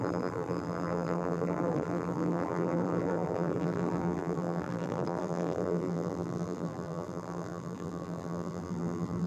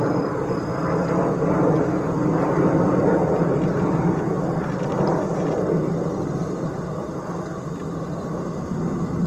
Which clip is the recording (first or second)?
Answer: second